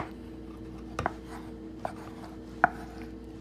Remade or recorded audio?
recorded